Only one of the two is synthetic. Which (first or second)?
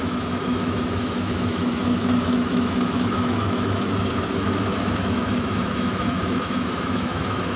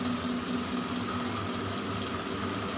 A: first